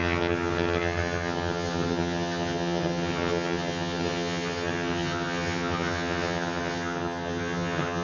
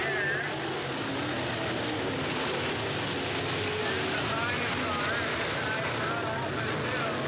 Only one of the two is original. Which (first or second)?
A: second